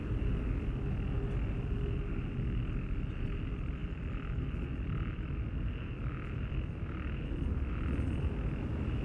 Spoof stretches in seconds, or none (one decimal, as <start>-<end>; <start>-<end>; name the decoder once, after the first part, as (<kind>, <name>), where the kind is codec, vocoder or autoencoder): 0.0-0.8 (vocoder, BigVGAN v2)